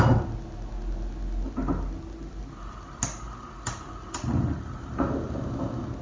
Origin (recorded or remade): recorded